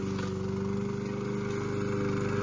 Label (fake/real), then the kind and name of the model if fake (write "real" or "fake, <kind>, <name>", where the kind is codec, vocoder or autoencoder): real